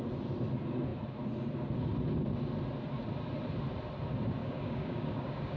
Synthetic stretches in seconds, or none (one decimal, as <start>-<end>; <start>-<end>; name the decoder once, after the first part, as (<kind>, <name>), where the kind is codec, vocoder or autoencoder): 4.4-5.6 (codec, DAC)